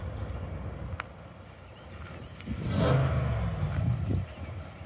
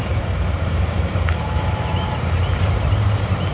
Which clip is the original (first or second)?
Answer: first